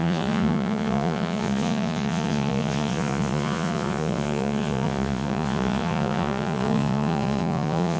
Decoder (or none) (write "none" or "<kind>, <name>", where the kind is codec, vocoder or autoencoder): vocoder, Vocos